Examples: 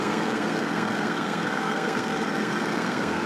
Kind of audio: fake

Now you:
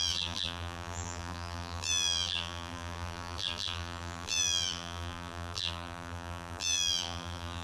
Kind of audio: fake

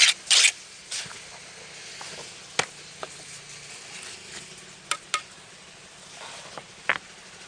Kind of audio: real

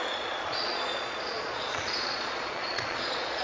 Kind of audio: fake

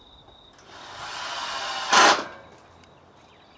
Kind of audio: real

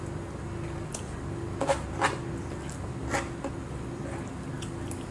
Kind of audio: real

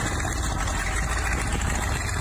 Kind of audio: real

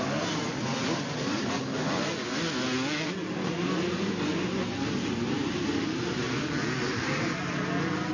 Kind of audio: real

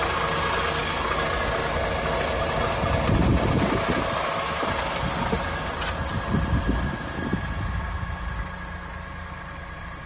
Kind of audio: real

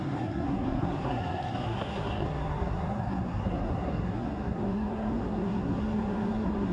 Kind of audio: fake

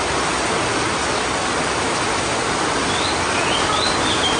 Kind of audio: real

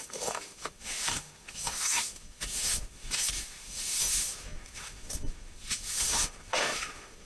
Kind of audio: fake